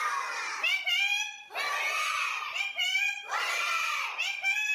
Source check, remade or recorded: recorded